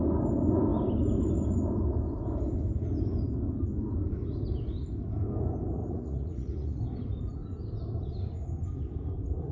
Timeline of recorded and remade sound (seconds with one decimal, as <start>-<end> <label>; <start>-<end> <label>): 0.0-5.8 recorded; 5.8-6.8 remade; 6.8-9.5 recorded